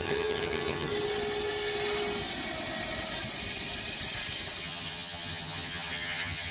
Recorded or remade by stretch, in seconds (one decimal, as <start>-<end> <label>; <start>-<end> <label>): 0.0-0.9 remade; 0.9-4.6 recorded; 4.6-6.5 remade